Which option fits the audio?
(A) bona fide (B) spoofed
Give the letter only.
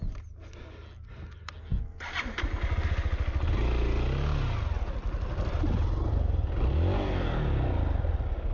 A